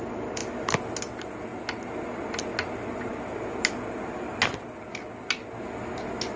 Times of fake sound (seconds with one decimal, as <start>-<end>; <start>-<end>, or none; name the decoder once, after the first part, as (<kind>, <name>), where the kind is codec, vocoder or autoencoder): none